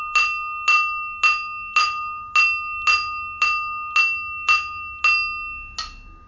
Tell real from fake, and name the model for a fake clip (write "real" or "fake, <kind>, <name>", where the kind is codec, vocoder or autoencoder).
real